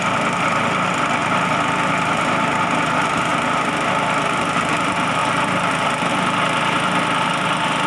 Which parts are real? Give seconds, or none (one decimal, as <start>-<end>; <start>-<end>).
0.0-5.2; 6.1-7.9